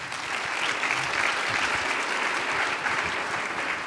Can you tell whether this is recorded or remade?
recorded